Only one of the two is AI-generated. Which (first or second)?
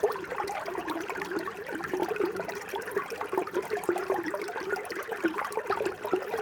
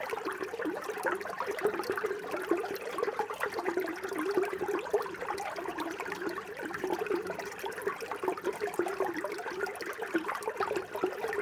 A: first